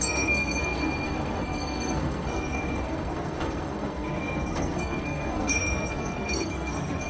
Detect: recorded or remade remade